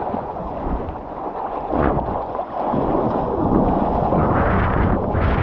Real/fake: fake